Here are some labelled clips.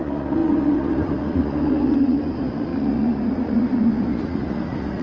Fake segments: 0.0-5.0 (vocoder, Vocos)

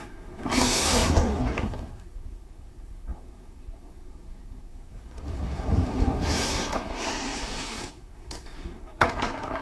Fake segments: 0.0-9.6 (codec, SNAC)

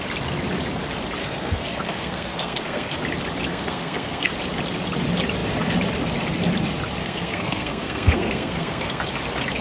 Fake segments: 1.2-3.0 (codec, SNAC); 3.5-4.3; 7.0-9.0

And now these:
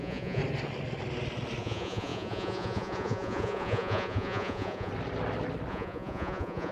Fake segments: 0.0-0.4 (vocoder, Vocos); 1.6-4.9; 5.7-6.7

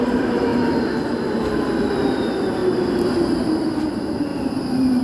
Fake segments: 0.0-0.5 (vocoder, BigVGAN v2); 1.9-2.6; 3.5-5.0